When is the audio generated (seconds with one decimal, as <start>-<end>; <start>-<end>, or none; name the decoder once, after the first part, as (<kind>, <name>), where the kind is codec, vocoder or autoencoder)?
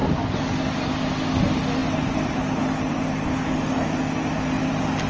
none